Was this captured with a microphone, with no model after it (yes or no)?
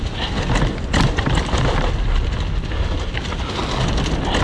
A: yes